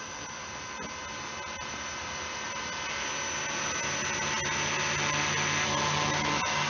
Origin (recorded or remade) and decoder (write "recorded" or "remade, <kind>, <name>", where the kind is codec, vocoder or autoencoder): recorded